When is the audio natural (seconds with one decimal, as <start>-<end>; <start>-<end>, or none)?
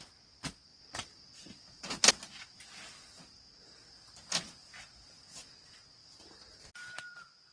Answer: 0.0-0.7; 2.1-6.0; 6.7-7.5